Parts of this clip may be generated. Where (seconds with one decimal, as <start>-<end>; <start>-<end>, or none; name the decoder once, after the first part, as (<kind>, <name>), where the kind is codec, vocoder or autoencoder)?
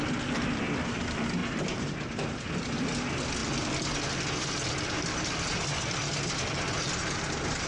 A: 1.4-2.5 (vocoder, BigVGAN v2)